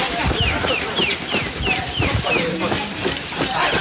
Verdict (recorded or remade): recorded